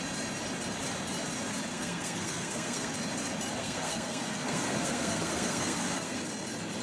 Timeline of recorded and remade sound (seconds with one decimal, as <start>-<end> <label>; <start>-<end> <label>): 0.0-1.7 recorded; 1.7-2.9 remade; 2.9-3.6 recorded; 3.6-6.2 remade; 6.2-6.8 recorded